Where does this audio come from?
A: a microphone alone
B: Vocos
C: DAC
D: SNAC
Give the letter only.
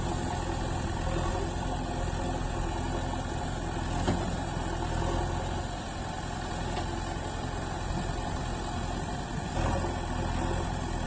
A